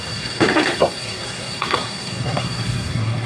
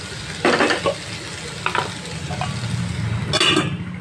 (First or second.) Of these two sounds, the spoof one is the first